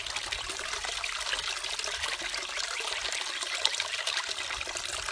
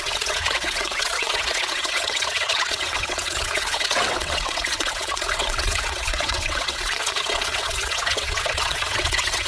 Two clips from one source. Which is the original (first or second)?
first